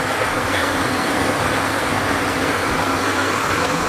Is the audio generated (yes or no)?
yes